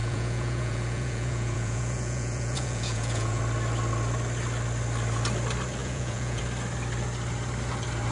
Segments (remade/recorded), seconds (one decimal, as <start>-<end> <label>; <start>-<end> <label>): 0.0-3.4 remade; 3.4-5.8 recorded; 5.8-6.4 remade; 6.4-8.1 recorded